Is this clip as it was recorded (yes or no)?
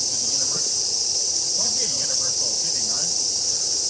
no